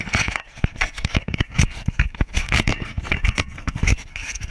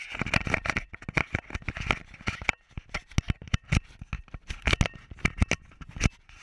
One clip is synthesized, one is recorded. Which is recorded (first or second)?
second